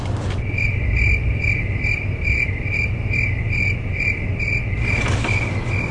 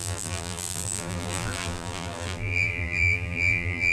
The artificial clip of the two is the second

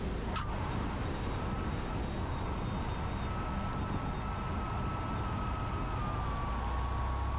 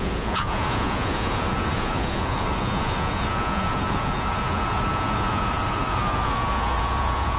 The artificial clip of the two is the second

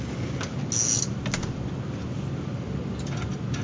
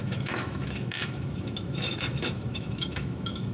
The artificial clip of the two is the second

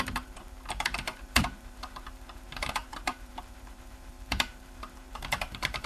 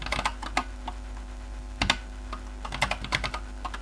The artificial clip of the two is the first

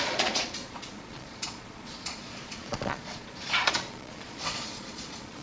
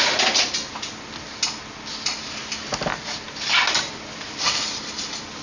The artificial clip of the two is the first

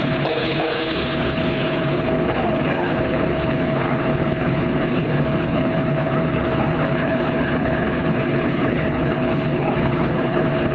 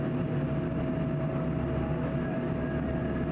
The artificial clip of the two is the first